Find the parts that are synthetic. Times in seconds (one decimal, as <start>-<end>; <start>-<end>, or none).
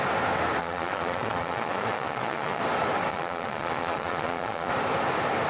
0.6-2.6; 3.1-4.7